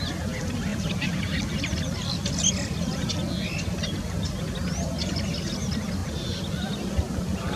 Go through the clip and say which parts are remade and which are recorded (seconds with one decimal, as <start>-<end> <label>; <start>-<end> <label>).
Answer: 0.0-7.6 recorded